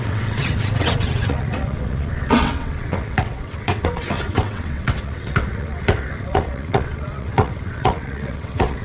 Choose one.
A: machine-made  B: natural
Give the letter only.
A